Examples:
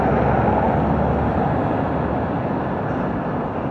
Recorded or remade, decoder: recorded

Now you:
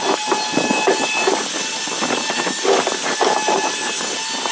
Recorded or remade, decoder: recorded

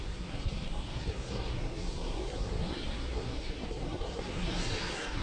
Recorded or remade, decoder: remade, codec, SNAC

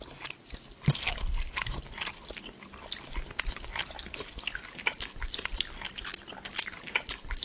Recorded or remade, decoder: recorded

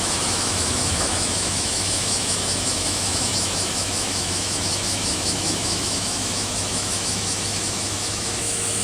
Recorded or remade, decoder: remade, autoencoder, DAC-VAE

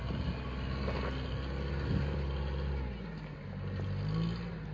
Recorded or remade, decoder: recorded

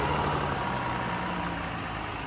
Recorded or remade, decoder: recorded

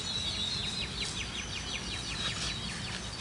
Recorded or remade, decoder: recorded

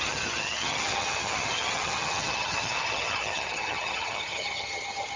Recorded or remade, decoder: remade, vocoder, HiFi-GAN